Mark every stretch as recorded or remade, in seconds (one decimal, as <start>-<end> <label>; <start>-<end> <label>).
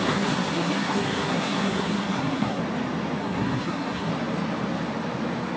0.0-2.6 remade; 2.6-3.2 recorded; 3.2-4.1 remade; 4.1-5.6 recorded